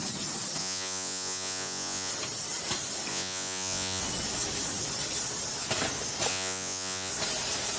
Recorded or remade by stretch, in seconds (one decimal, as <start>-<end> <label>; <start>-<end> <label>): 0.0-0.6 recorded; 0.6-2.1 remade; 2.1-3.1 recorded; 3.1-4.0 remade; 4.0-6.3 recorded; 6.3-7.1 remade; 7.1-7.8 recorded

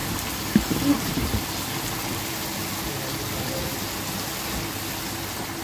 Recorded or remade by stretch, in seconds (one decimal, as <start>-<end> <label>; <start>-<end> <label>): 0.0-5.6 recorded

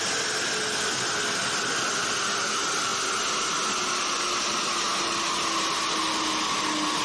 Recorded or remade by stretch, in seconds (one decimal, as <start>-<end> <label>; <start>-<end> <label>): 0.0-7.0 recorded

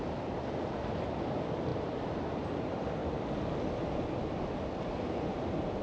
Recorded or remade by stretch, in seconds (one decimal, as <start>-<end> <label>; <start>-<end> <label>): 0.0-5.8 recorded

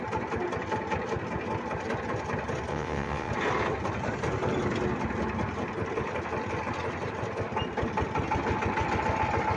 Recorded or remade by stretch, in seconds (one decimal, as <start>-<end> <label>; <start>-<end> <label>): 0.0-2.7 recorded; 2.7-3.3 remade; 3.3-9.6 recorded